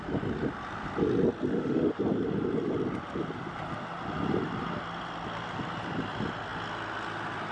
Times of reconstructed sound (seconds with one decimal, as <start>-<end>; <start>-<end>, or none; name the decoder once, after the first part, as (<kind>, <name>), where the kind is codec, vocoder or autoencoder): 1.5-2.0 (autoencoder, DAC-VAE)